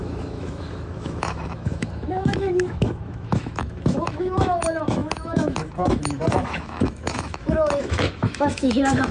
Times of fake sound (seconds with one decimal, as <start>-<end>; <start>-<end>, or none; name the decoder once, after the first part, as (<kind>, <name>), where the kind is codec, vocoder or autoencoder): 0.0-9.1 (autoencoder, DAC-VAE)